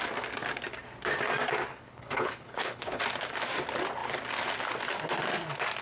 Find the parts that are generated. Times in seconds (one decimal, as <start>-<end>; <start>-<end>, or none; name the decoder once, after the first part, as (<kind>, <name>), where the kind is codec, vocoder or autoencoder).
1.7-3.0 (codec, HILCodec)